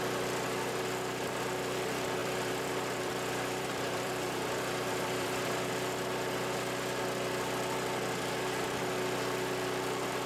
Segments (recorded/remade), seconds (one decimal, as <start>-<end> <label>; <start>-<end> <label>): 0.0-2.2 recorded; 2.2-5.7 remade; 5.7-10.3 recorded